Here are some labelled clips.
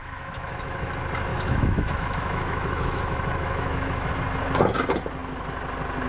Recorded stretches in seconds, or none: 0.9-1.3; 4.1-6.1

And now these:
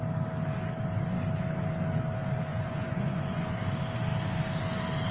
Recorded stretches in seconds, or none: 0.0-2.5; 3.6-5.1